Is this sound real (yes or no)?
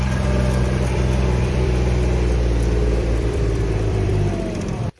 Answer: no